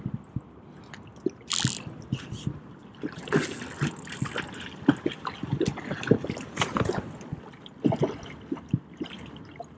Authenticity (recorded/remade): recorded